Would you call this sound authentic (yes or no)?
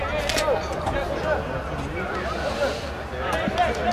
yes